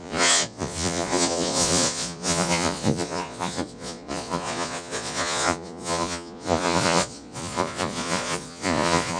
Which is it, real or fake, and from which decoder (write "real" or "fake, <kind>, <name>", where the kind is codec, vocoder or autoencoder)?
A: fake, vocoder, Vocos